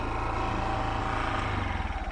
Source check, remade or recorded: recorded